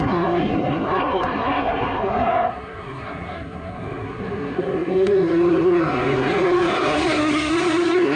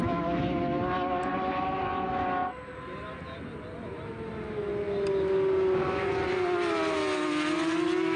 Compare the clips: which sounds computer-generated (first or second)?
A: first